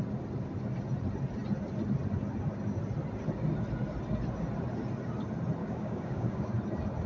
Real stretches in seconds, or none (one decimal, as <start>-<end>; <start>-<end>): 0.0-5.6; 6.5-7.1